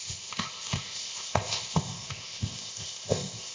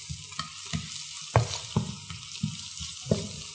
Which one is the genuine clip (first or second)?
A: second